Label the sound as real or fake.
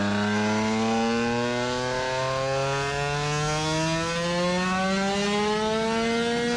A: real